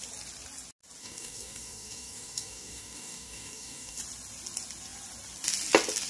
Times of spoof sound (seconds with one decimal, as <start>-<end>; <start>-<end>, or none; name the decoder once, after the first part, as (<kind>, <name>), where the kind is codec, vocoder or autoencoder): 1.0-4.0 (codec, DAC)